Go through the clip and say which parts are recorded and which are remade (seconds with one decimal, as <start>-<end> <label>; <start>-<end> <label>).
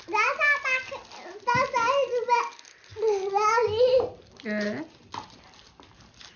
0.0-6.4 recorded